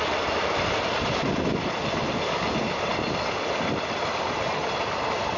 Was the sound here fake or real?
real